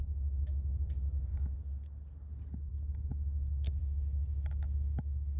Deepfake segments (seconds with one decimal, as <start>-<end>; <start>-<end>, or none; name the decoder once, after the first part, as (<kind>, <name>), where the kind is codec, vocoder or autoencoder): 0.0-1.3 (autoencoder, DAC-VAE); 2.7-5.4

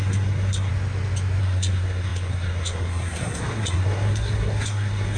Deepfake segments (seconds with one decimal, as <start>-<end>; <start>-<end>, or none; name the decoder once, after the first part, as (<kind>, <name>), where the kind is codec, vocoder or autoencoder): 0.0-0.7 (codec, SNAC); 1.4-5.2

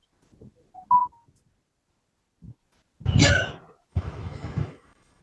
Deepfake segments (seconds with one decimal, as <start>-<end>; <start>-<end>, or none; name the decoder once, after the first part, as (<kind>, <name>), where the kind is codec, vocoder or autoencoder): 3.9-5.2 (autoencoder, DAC-VAE)

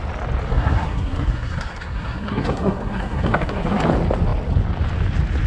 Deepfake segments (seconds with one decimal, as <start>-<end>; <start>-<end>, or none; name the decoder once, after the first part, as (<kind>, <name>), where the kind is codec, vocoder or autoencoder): 0.5-3.8 (codec, SNAC)

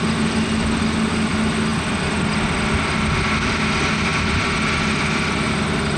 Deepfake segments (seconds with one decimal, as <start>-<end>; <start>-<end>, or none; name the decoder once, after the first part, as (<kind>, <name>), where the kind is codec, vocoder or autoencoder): none

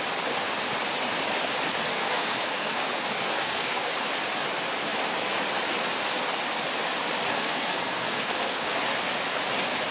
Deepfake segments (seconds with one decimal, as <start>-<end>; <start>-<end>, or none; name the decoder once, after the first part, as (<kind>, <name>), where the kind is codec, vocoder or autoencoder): 1.9-3.9 (codec, SNAC); 7.3-8.6